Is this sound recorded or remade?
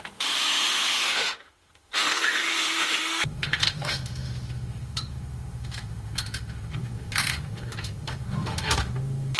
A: remade